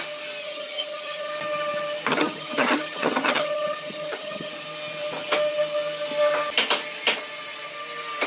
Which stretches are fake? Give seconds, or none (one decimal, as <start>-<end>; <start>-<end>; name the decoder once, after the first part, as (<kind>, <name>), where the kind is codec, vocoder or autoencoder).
0.4-1.3 (vocoder, HiFi-GAN); 2.1-4.5